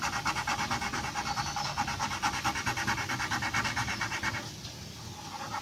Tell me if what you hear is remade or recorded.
recorded